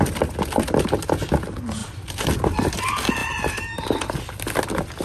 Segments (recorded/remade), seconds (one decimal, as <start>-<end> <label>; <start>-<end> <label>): 0.0-1.8 recorded; 1.8-2.7 remade; 2.7-3.2 recorded; 3.2-4.2 remade; 4.2-5.0 recorded